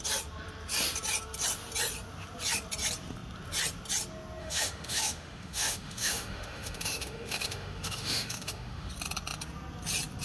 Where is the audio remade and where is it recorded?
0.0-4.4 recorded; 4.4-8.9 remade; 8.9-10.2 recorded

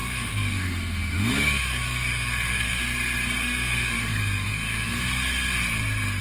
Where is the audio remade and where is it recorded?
0.0-2.8 remade; 2.8-3.4 recorded; 3.4-5.0 remade; 5.0-6.2 recorded

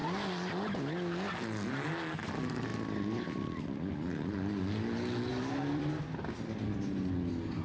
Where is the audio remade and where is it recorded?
0.0-0.5 remade; 0.5-2.7 recorded; 2.7-3.9 remade; 3.9-5.3 recorded; 5.3-5.9 remade; 5.9-7.6 recorded

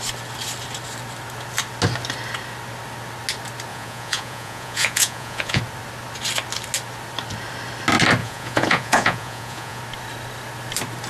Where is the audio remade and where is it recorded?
0.0-3.7 recorded; 3.7-5.6 remade; 5.6-8.2 recorded; 8.2-9.8 remade; 9.8-11.1 recorded

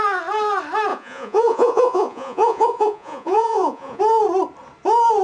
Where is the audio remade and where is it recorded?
0.0-0.9 recorded; 0.9-4.0 remade; 4.0-5.2 recorded

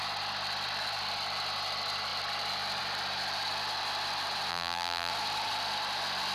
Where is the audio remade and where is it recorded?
0.0-4.5 recorded; 4.5-5.1 remade; 5.1-6.3 recorded